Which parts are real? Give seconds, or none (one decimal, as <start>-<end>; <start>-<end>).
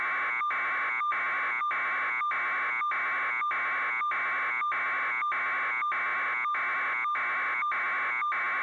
0.0-8.6